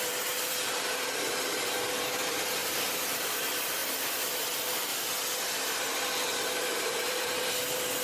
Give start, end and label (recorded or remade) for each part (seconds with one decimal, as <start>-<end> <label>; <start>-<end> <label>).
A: 0.0-3.8 remade; 3.8-4.5 recorded; 4.5-4.9 remade; 4.9-6.3 recorded; 6.3-8.0 remade